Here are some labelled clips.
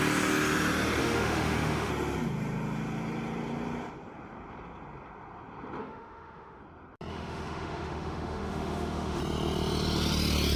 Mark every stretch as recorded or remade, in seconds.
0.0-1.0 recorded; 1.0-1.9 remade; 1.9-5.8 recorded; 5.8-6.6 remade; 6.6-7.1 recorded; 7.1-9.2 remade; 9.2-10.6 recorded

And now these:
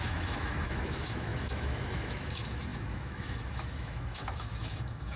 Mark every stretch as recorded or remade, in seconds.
0.0-5.2 remade

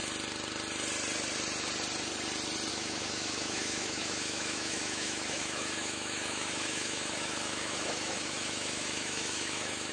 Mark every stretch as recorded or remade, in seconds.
0.0-2.7 recorded; 2.7-9.9 remade

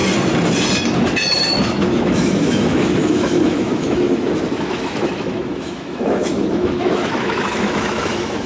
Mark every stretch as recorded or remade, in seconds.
0.0-1.6 recorded; 1.6-8.5 remade

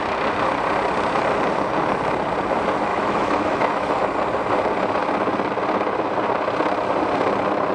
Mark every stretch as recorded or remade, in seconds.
0.0-2.9 recorded; 2.9-3.9 remade; 3.9-7.7 recorded

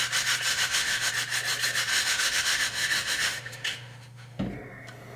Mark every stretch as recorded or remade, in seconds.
0.0-0.5 recorded; 0.5-1.1 remade; 1.1-1.9 recorded; 1.9-4.4 remade; 4.4-5.2 recorded